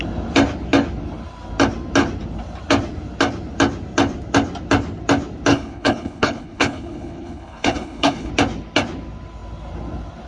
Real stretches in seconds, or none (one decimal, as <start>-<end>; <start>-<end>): 0.0-5.5; 8.3-10.3